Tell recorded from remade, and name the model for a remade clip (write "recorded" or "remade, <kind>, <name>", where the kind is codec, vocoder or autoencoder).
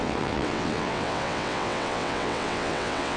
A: remade, vocoder, WaveNeXt